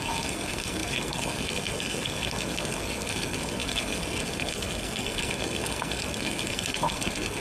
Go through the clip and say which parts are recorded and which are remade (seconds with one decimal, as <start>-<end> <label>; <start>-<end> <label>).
0.0-7.4 remade